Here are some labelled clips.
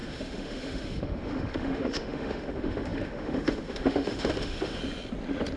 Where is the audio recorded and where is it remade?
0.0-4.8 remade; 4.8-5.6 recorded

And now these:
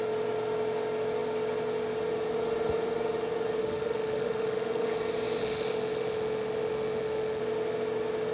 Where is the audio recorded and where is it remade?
0.0-3.6 recorded; 3.6-4.9 remade; 4.9-5.4 recorded; 5.4-7.4 remade; 7.4-8.3 recorded